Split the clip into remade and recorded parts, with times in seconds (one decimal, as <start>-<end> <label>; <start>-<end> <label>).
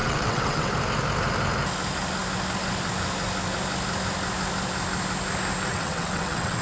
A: 0.0-0.7 remade; 0.7-5.7 recorded; 5.7-6.6 remade